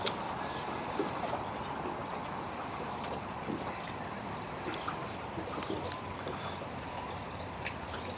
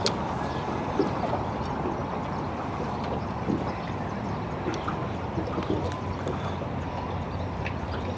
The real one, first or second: second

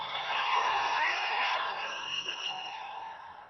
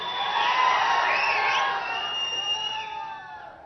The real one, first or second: second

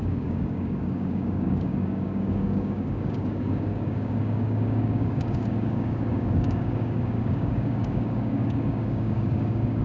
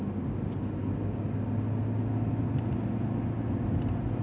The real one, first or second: second